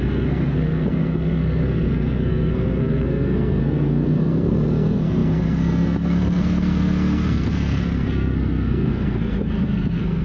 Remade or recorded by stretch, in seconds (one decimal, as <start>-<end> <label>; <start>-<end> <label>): 0.0-10.2 remade